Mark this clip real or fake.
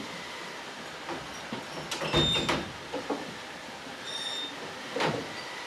real